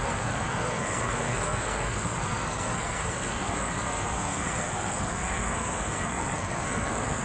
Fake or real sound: fake